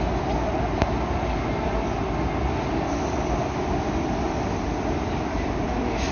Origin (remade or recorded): recorded